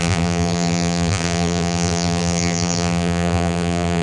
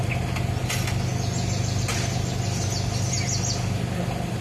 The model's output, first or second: first